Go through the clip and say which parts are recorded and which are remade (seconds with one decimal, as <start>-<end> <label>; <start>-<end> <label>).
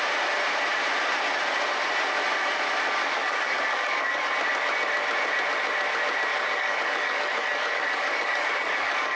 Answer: 0.0-3.1 recorded; 3.1-4.3 remade; 4.3-6.3 recorded; 6.3-9.2 remade